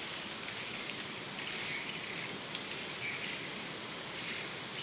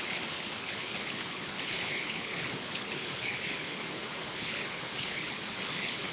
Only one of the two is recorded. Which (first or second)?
first